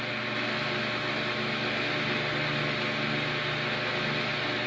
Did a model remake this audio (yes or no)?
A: no